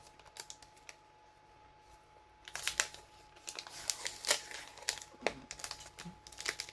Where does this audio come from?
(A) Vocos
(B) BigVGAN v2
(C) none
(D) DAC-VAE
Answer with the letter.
C